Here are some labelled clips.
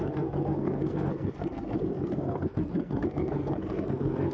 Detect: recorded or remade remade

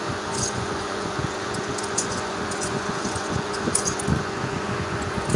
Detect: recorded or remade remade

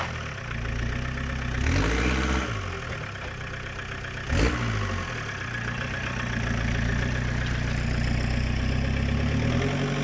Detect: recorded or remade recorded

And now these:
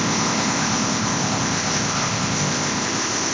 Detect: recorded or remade remade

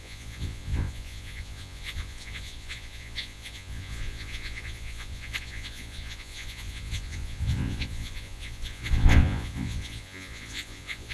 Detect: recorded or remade remade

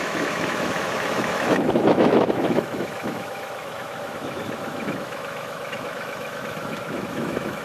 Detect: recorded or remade remade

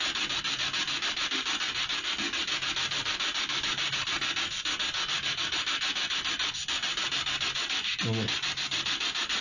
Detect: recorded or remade recorded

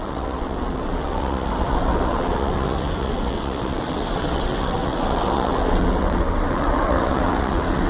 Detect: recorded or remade remade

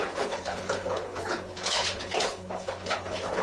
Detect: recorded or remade remade